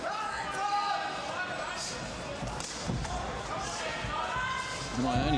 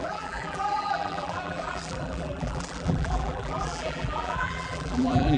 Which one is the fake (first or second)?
second